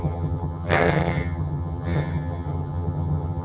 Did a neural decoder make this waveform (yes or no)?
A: yes